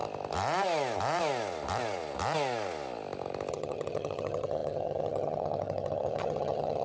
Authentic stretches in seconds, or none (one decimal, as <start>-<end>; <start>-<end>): 0.0-3.5